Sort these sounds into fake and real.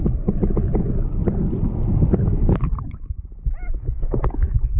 real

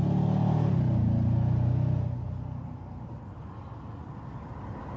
real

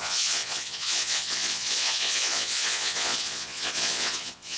fake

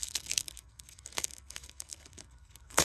fake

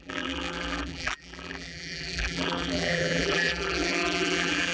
fake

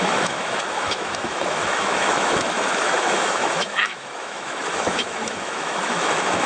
fake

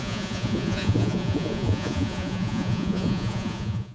fake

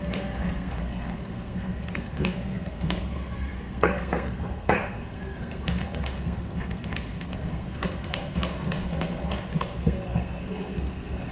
fake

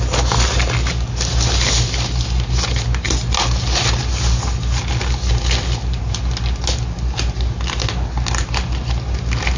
real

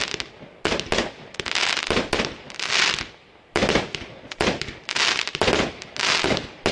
real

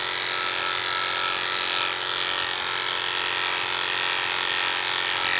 real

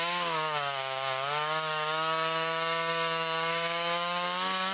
fake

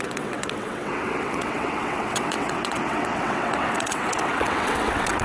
fake